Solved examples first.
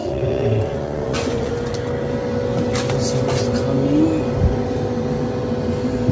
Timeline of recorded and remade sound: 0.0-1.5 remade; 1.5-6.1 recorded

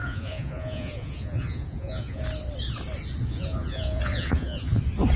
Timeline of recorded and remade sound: 0.0-2.2 remade; 2.2-3.2 recorded; 3.2-4.8 remade; 4.8-5.2 recorded

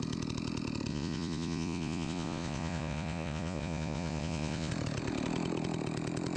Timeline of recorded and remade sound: 0.0-0.9 recorded; 0.9-4.7 remade; 4.7-6.4 recorded

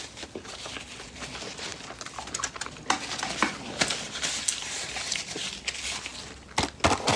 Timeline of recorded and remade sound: 0.0-7.2 recorded

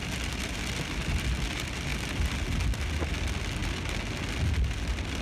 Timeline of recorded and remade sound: 0.0-5.2 recorded

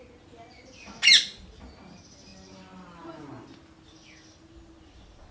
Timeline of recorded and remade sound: 0.0-5.3 recorded

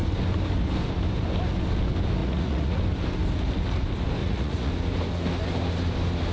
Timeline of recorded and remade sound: 0.0-2.2 recorded; 2.2-2.8 remade; 2.8-4.2 recorded; 4.2-4.7 remade; 4.7-6.3 recorded